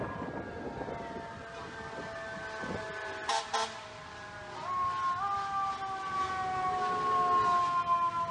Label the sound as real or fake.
real